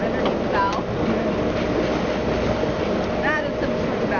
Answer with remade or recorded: recorded